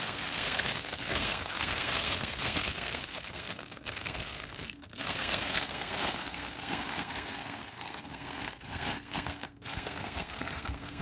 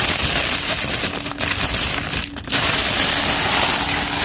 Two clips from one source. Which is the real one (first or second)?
second